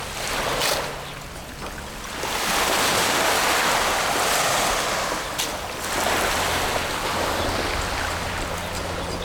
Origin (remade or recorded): recorded